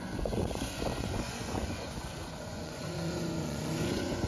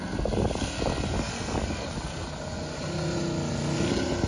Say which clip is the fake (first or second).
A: first